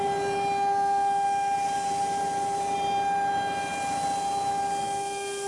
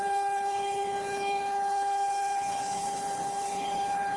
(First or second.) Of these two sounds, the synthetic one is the second